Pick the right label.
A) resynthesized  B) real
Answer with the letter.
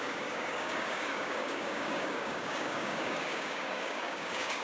A